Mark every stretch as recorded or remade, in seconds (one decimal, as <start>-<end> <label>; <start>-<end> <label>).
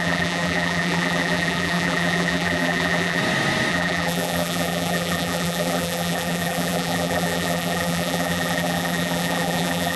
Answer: 0.0-3.2 remade; 3.2-3.7 recorded; 3.7-10.0 remade